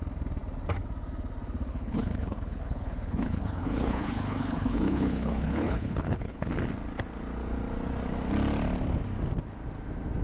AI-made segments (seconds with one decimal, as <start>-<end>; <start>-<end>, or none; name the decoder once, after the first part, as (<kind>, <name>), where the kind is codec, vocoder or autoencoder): 1.7-6.5 (codec, HILCodec)